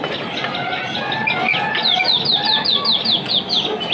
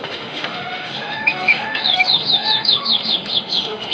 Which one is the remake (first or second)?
second